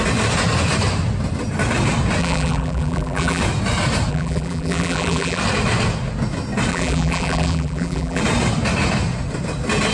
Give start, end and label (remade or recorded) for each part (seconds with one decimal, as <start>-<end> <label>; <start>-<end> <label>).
0.0-2.2 recorded; 2.2-3.4 remade; 3.4-4.1 recorded; 4.1-5.4 remade; 5.4-6.7 recorded; 6.7-8.2 remade; 8.2-9.9 recorded

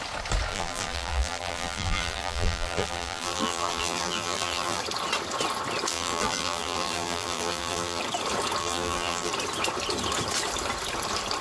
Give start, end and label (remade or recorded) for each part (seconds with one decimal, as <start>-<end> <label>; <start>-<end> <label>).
0.0-0.5 recorded; 0.5-4.8 remade; 4.8-5.9 recorded; 5.9-8.0 remade; 8.0-8.6 recorded; 8.6-9.3 remade; 9.3-11.4 recorded

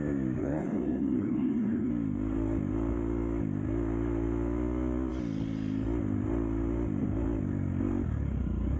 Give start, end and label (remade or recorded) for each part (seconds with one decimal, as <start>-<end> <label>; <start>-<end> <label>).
0.0-0.4 recorded; 0.4-1.9 remade; 1.9-8.8 recorded

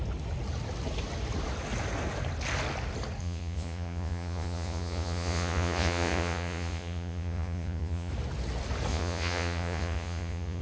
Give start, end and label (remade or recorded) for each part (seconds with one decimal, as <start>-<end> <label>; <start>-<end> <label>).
0.0-3.2 recorded; 3.2-8.1 remade; 8.1-8.9 recorded; 8.9-10.6 remade

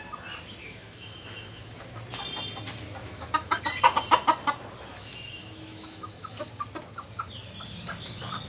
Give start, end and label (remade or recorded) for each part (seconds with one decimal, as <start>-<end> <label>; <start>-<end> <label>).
0.0-0.6 recorded; 0.6-1.7 remade; 1.7-3.0 recorded; 3.0-3.6 remade; 3.6-4.9 recorded; 4.9-6.3 remade; 6.3-8.5 recorded

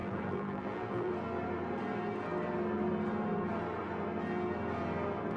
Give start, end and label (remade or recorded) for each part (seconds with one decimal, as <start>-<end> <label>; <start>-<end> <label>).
0.0-1.1 remade; 1.1-5.4 recorded

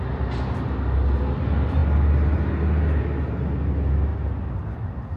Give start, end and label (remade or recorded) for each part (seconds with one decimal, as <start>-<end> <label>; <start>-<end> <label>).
0.0-5.2 recorded